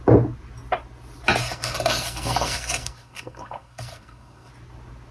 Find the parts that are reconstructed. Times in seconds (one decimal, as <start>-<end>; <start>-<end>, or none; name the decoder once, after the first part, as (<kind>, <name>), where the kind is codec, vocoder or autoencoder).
1.4-4.5 (codec, SNAC)